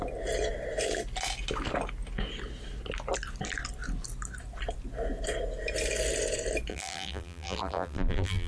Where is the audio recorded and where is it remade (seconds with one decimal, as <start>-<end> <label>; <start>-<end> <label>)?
0.0-6.7 recorded; 6.7-8.5 remade